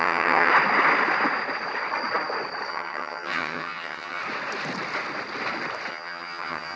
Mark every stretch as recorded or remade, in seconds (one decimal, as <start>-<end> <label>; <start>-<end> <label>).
0.0-0.5 remade; 0.5-2.7 recorded; 2.7-4.2 remade; 4.2-5.9 recorded; 5.9-6.8 remade